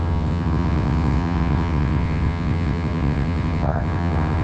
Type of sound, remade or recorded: remade